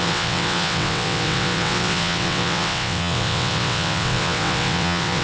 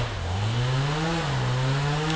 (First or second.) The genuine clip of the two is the second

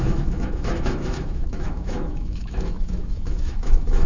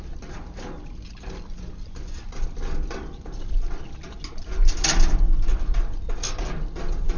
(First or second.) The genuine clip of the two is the second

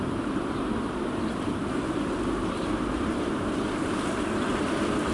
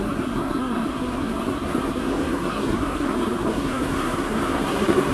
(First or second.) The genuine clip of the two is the first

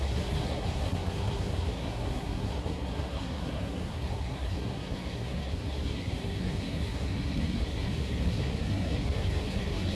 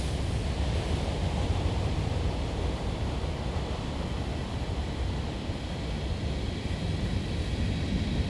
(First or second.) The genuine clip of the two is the second